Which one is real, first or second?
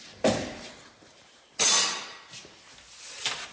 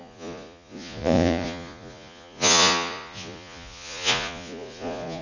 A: first